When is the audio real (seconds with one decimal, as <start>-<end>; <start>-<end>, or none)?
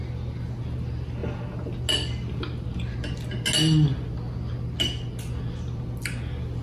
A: 0.0-6.6